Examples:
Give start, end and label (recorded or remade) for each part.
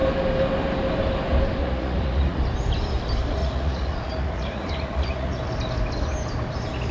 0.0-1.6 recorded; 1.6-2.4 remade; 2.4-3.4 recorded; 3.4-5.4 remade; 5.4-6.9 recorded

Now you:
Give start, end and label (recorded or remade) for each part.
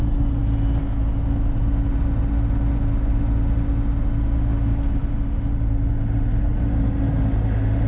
0.0-7.9 recorded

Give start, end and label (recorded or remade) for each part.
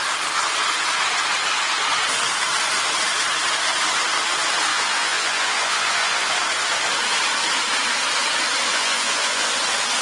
0.0-4.7 recorded; 4.7-6.3 remade; 6.3-8.7 recorded; 8.7-9.6 remade; 9.6-10.0 recorded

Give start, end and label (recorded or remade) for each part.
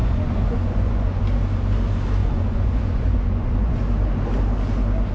0.0-1.2 remade; 1.2-2.2 recorded; 2.2-3.8 remade; 3.8-5.1 recorded